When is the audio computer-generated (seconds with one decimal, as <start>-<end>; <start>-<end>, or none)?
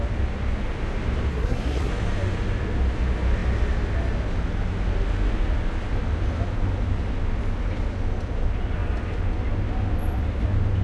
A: 1.3-1.9